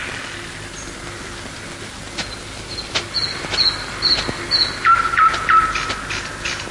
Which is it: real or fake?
real